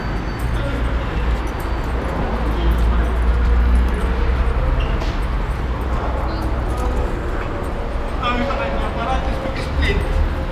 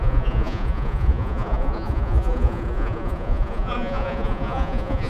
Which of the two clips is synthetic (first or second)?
second